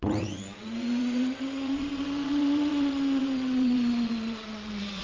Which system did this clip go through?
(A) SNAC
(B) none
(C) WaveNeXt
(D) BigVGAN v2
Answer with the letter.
C